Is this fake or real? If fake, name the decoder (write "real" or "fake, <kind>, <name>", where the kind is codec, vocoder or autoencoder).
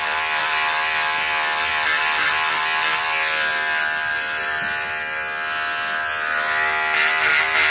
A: real